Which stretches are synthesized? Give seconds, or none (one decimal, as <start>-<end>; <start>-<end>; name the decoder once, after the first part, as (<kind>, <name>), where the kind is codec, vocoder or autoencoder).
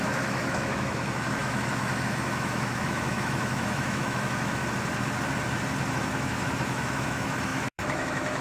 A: 0.0-4.6 (autoencoder, DAC-VAE); 5.9-8.4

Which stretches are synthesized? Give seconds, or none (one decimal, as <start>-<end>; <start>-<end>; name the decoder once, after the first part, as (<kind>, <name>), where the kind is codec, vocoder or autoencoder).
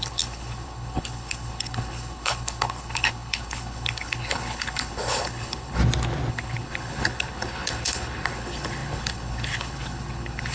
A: 0.0-5.8 (codec, HILCodec); 6.3-10.5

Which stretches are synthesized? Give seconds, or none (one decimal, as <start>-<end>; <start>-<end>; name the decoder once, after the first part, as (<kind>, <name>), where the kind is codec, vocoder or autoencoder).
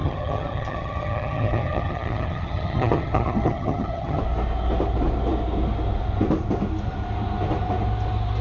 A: 0.0-4.2 (vocoder, HiFi-GAN)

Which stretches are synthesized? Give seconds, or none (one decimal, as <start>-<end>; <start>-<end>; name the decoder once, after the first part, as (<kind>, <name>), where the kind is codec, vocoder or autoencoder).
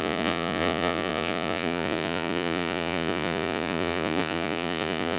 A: 0.0-5.2 (vocoder, Vocos)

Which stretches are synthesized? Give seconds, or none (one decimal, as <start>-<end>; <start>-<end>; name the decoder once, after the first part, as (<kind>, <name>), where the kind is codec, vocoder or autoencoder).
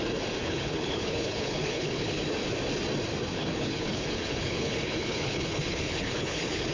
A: 0.4-2.2 (codec, HILCodec); 3.3-6.7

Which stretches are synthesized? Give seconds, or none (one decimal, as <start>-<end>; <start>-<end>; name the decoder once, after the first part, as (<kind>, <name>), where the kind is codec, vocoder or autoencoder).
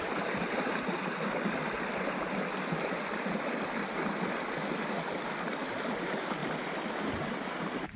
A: none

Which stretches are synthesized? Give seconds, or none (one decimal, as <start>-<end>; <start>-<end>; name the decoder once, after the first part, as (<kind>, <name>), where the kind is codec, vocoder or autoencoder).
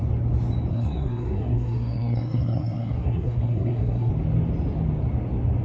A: 0.7-4.1 (codec, SNAC)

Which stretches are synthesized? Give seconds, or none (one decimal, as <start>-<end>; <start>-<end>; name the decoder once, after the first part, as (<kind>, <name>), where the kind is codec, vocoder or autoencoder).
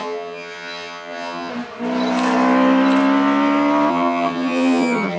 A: 0.0-1.5 (vocoder, HiFi-GAN); 3.9-5.2